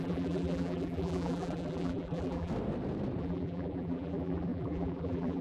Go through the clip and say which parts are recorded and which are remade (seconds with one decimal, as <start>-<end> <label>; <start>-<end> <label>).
0.0-2.5 remade; 2.5-3.2 recorded; 3.2-5.4 remade